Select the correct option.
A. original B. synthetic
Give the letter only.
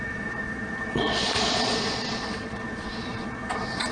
B